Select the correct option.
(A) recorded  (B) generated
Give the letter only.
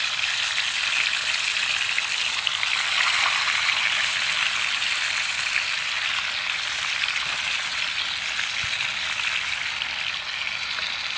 A